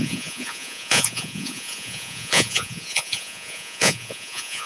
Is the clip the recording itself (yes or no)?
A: no